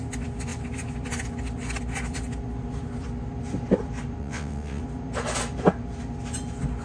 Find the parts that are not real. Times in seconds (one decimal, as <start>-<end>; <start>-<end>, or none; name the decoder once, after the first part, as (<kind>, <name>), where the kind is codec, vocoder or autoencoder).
4.2-4.8 (vocoder, WaveNeXt)

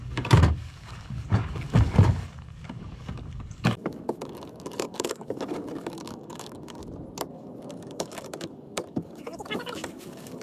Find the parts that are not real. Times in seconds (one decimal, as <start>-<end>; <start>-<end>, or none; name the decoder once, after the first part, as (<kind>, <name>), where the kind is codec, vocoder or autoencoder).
0.0-6.8 (codec, DAC); 7.3-10.4

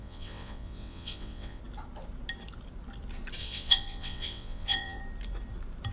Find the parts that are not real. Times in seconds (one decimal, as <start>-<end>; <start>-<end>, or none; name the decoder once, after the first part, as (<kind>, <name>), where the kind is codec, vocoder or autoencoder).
0.0-1.6 (vocoder, WaveNeXt); 3.4-5.0